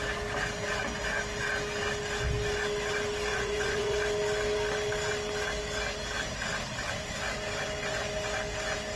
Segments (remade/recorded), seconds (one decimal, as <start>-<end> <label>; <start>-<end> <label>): 0.0-3.3 recorded; 3.3-4.0 remade; 4.0-9.0 recorded